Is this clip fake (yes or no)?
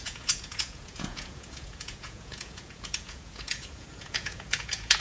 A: yes